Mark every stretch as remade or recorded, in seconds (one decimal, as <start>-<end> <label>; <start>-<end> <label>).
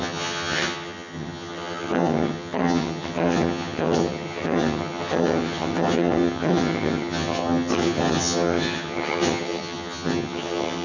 0.0-10.8 remade